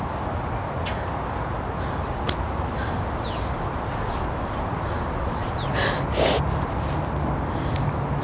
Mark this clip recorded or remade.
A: recorded